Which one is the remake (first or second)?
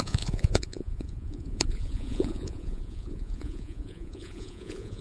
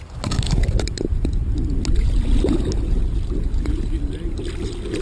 first